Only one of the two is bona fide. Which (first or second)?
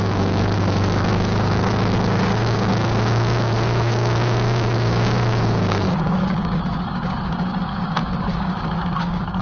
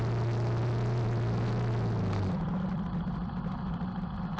second